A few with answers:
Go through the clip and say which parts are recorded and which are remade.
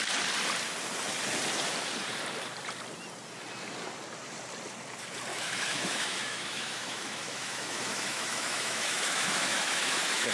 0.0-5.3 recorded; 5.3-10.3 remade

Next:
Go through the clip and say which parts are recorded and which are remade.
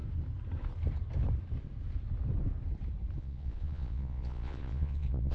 0.0-3.2 recorded; 3.2-5.3 remade